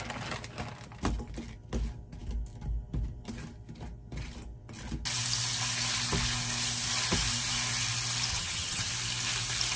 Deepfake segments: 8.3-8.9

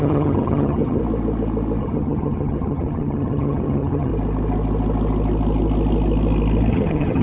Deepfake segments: 0.0-1.0; 1.8-4.1; 6.7-7.2

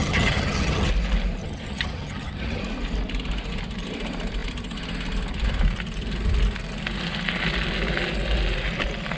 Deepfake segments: 0.0-0.9; 1.4-2.6

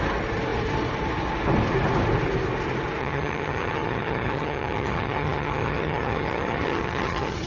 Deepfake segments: 3.0-7.5

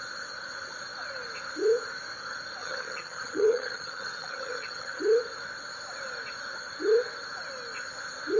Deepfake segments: 2.6-5.0

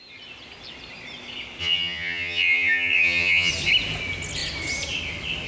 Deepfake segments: 1.6-3.5

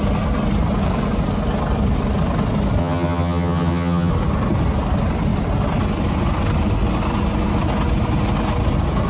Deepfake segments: 2.8-4.1

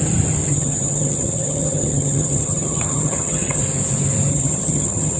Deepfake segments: 0.5-3.6; 4.3-5.2